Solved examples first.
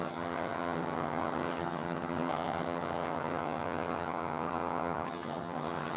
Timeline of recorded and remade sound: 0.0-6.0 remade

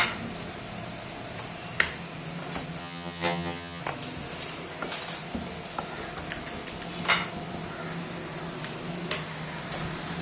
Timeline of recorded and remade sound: 0.0-2.8 recorded; 2.8-3.8 remade; 3.8-10.2 recorded

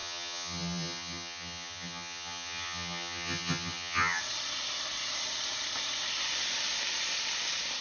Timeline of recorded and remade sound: 0.0-4.2 remade; 4.2-7.8 recorded

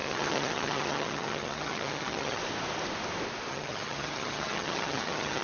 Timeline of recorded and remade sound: 0.0-2.4 remade; 2.4-3.5 recorded; 3.5-5.4 remade

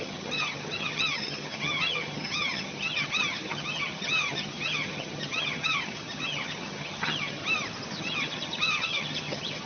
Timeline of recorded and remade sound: 0.0-7.4 remade; 7.4-8.0 recorded; 8.0-9.7 remade

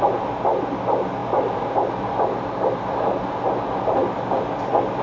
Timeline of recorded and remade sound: 0.0-5.0 recorded

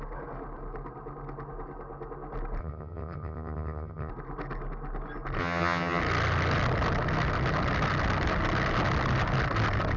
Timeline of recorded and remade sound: 0.0-2.6 recorded; 2.6-4.1 remade; 4.1-5.4 recorded; 5.4-6.0 remade; 6.0-10.0 recorded